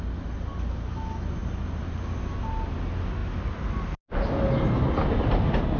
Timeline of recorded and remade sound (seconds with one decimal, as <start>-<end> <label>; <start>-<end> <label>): 0.0-1.4 recorded; 1.4-2.0 remade; 2.0-3.2 recorded; 3.2-4.0 remade; 4.0-5.8 recorded